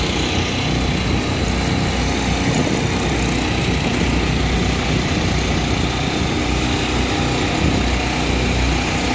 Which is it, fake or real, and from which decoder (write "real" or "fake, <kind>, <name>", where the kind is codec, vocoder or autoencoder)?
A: real